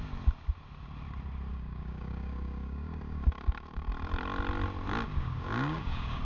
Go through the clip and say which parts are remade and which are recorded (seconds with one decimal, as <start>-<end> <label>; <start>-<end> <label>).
0.0-1.5 recorded; 1.5-3.9 remade; 3.9-4.9 recorded; 4.9-6.2 remade